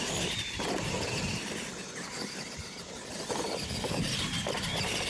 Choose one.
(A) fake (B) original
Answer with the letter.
B